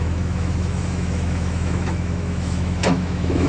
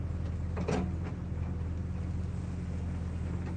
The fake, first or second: first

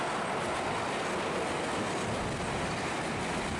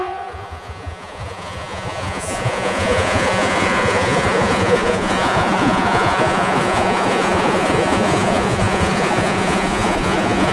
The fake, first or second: second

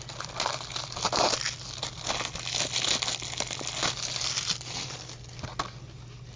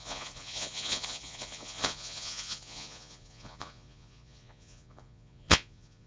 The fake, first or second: second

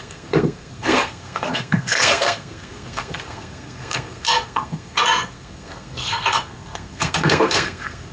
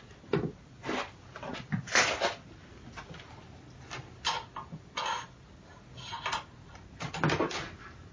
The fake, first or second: first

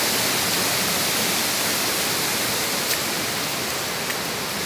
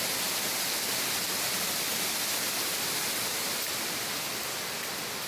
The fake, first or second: first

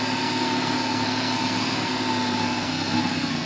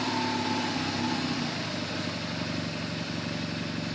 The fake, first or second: first